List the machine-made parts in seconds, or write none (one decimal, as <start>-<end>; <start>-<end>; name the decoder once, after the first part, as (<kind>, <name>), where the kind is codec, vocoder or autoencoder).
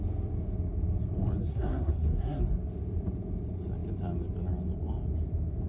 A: 1.4-2.4 (codec, SNAC)